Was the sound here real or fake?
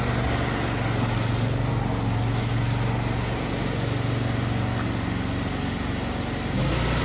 real